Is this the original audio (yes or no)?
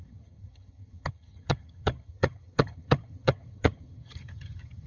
no